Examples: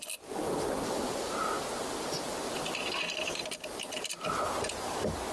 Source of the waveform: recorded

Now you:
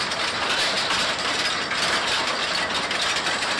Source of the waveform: recorded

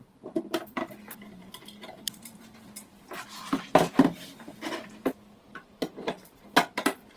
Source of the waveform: remade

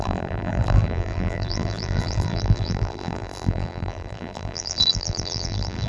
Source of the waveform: remade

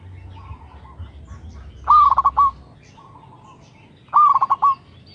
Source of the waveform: recorded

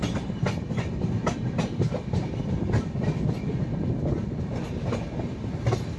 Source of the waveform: recorded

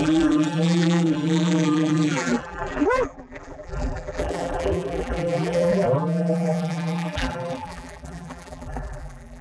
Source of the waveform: remade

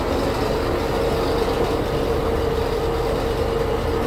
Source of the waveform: recorded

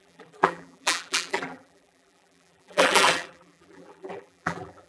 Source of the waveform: remade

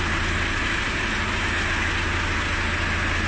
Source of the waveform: recorded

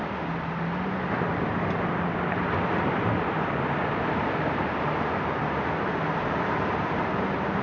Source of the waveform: remade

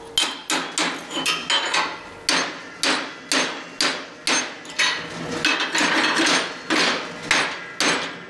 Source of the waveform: recorded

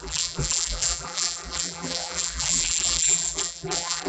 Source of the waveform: remade